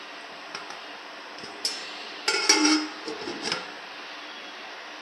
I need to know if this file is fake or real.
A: real